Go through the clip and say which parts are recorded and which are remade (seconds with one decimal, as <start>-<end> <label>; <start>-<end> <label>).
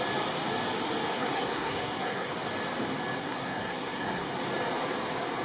0.0-1.1 recorded; 1.1-2.3 remade; 2.3-3.2 recorded; 3.2-4.3 remade; 4.3-5.4 recorded